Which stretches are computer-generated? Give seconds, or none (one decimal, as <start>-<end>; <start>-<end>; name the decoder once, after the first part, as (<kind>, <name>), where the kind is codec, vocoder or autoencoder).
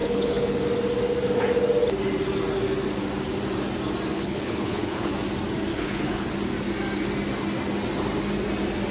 0.0-0.6 (codec, HILCodec); 4.1-5.1; 5.7-6.3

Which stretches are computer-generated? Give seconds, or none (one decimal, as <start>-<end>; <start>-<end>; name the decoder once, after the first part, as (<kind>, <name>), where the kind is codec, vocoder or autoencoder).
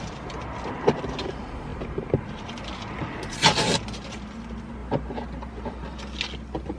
none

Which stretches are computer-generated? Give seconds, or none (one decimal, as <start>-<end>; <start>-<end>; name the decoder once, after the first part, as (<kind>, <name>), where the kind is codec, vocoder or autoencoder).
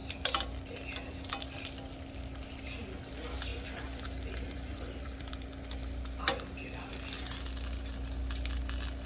3.5-5.3 (vocoder, BigVGAN v2)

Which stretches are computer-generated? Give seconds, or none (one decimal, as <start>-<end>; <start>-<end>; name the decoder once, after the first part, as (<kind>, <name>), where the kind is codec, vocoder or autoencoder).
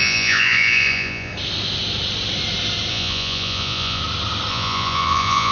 0.0-1.3 (vocoder, Vocos); 2.9-4.0; 4.5-5.5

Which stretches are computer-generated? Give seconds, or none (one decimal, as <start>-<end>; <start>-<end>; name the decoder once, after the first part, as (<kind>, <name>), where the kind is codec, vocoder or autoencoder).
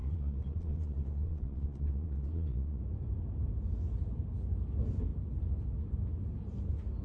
0.0-2.8 (vocoder, Vocos)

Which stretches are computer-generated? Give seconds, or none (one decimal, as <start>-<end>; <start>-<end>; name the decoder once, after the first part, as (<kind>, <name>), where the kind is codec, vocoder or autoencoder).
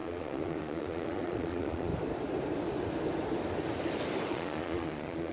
0.0-1.9 (vocoder, Vocos); 4.3-5.3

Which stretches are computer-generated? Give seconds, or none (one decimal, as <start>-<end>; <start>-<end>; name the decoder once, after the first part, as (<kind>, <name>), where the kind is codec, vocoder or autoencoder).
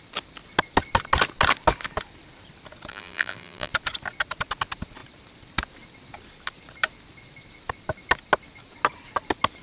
2.9-3.7 (vocoder, BigVGAN v2)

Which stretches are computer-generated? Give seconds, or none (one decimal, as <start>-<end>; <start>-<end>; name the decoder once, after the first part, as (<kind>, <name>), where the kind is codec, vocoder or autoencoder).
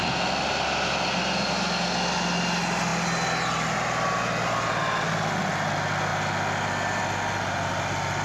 none